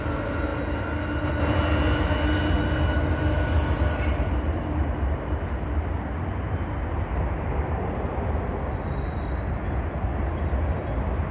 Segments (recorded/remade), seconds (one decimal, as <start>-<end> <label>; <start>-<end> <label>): 0.0-11.3 recorded

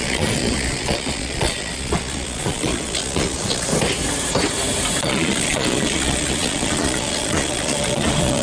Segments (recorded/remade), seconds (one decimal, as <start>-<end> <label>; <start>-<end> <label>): 0.0-3.7 remade; 3.7-5.0 recorded; 5.0-8.4 remade

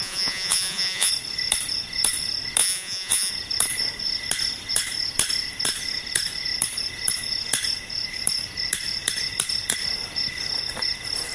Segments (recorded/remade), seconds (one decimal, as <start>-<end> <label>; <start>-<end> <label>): 0.0-1.1 remade; 1.1-2.6 recorded; 2.6-3.3 remade; 3.3-11.3 recorded

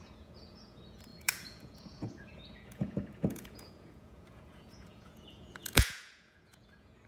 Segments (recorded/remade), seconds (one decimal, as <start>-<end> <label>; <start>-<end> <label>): 0.0-7.1 remade

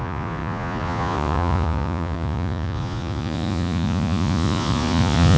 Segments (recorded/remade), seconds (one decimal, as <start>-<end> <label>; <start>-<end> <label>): 0.0-5.4 remade

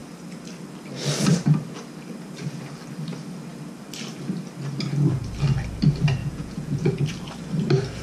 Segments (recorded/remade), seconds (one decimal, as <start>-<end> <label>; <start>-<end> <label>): 0.0-6.2 recorded; 6.2-7.0 remade; 7.0-8.0 recorded

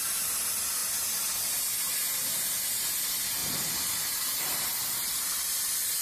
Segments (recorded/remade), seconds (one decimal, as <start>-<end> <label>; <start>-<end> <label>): 0.0-6.0 recorded